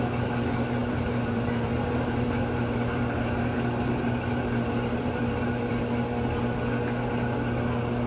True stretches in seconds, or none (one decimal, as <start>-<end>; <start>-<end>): 0.0-0.8; 5.7-8.1